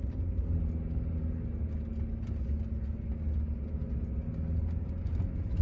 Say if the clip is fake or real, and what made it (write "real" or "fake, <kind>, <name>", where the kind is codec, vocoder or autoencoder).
real